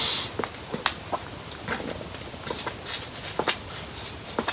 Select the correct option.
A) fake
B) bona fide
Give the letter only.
B